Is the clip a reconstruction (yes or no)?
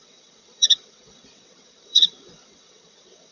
yes